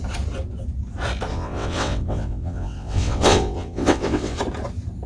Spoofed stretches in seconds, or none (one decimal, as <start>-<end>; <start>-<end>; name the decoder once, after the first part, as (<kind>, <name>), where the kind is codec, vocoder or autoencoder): 1.3-4.4 (vocoder, WaveNeXt)